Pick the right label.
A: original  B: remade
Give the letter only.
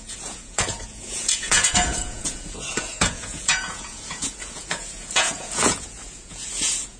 B